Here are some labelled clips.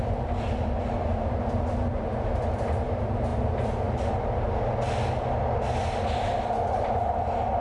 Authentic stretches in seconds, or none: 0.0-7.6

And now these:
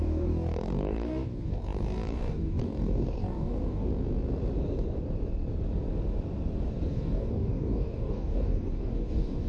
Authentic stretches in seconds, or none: 3.9-6.9

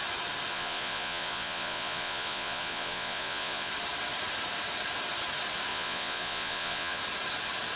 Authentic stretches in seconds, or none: 0.0-0.5; 3.7-5.7; 7.0-7.8

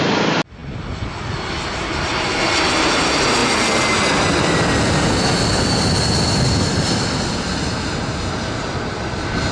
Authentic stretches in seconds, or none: 0.0-9.5

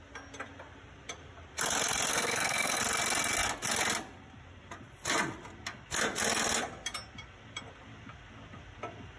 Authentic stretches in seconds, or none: 0.0-2.1; 2.8-9.2

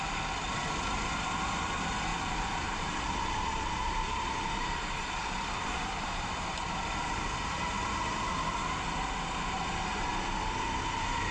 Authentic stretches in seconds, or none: 0.0-2.1; 6.3-11.3

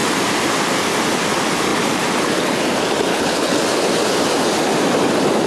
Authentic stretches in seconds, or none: 0.0-3.1; 3.6-5.5

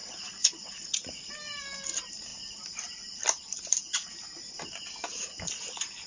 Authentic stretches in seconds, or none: 1.3-6.1